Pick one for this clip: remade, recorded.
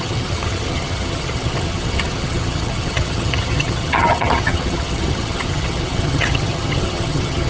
remade